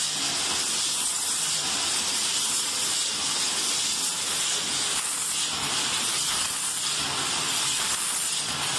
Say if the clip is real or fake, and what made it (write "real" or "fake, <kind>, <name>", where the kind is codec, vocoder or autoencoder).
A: real